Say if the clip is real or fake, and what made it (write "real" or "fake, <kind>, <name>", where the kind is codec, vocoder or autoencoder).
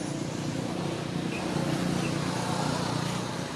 real